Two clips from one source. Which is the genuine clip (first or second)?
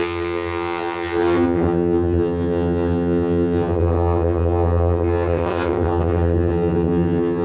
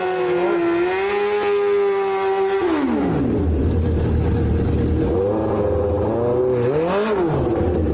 second